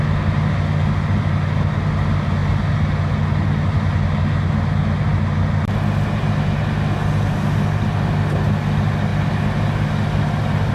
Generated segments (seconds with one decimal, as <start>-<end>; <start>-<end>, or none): none